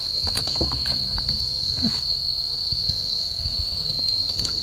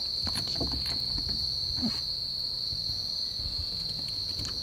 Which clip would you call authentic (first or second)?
second